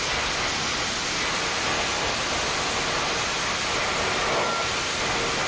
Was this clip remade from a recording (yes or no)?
no